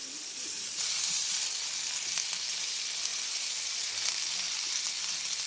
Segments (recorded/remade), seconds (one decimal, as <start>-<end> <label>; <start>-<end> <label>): 0.0-1.7 remade; 1.7-3.1 recorded; 3.1-4.6 remade; 4.6-5.5 recorded